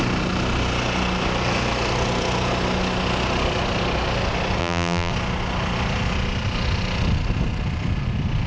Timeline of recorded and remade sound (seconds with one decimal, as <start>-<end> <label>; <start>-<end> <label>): 0.0-4.6 recorded; 4.6-5.1 remade; 5.1-8.5 recorded